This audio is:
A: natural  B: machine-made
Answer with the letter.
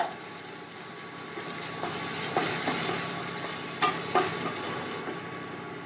A